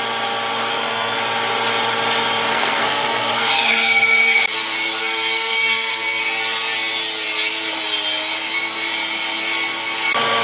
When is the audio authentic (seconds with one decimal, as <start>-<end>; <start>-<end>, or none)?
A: 0.0-0.7; 1.2-2.5; 4.4-5.0; 6.2-10.4